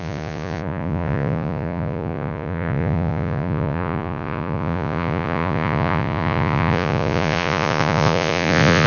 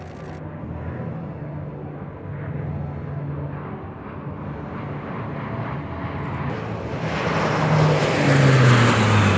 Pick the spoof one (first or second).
first